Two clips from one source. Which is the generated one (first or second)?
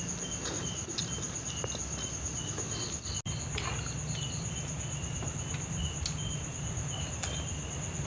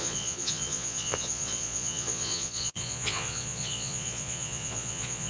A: second